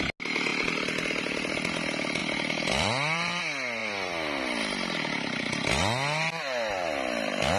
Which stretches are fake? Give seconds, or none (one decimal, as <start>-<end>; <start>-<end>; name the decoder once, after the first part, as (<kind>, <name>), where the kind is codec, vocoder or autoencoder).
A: 2.2-3.4 (vocoder, BigVGAN v2)